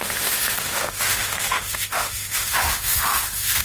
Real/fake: fake